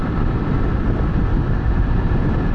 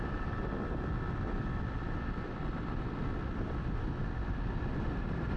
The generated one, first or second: first